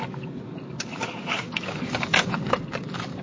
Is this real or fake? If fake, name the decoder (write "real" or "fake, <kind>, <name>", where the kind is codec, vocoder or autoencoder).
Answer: fake, codec, DAC